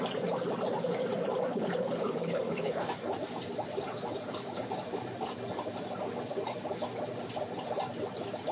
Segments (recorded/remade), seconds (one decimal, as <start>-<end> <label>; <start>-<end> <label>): 0.0-1.5 recorded; 1.5-2.8 remade; 2.8-8.5 recorded

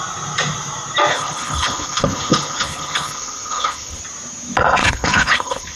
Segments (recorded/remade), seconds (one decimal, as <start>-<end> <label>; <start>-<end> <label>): 0.0-1.1 recorded; 1.1-4.0 remade; 4.0-4.8 recorded; 4.8-5.8 remade

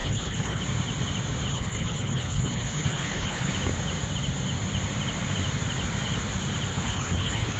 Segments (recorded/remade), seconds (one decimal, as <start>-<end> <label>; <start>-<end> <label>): 0.0-0.6 remade; 0.6-1.5 recorded; 1.5-3.5 remade; 3.5-6.7 recorded; 6.7-7.6 remade

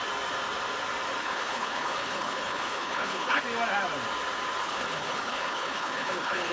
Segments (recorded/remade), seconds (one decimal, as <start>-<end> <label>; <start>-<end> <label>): 0.0-1.2 recorded; 1.2-3.4 remade; 3.4-4.6 recorded; 4.6-6.5 remade

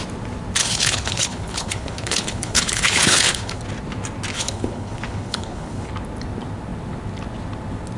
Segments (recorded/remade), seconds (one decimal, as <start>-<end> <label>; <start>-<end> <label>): 0.0-0.6 recorded; 0.6-3.6 remade; 3.6-4.3 recorded; 4.3-5.9 remade; 5.9-8.0 recorded

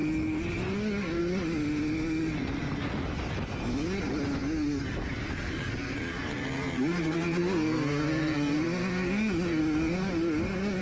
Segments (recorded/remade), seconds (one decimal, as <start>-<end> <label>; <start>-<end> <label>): 0.0-10.8 recorded